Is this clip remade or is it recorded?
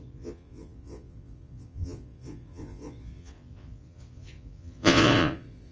remade